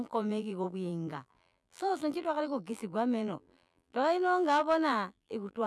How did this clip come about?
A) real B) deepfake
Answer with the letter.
B